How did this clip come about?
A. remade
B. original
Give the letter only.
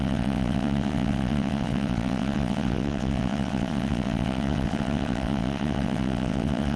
A